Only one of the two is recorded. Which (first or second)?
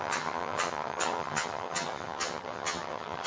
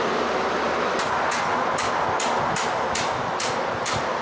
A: second